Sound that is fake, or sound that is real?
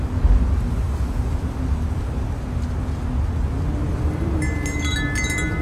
real